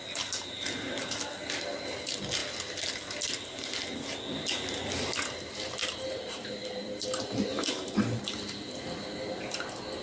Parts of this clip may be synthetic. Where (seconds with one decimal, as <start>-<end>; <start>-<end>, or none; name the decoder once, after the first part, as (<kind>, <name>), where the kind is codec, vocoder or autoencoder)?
5.8-7.9 (vocoder, BigVGAN v2)